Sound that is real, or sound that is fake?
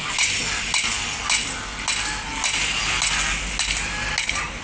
real